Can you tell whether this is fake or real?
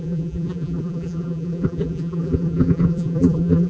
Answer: fake